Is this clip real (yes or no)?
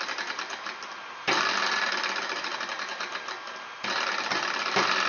yes